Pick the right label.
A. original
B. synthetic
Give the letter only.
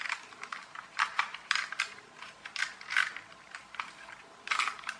A